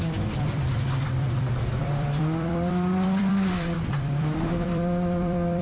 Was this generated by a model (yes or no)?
yes